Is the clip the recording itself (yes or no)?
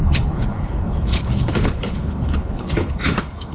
no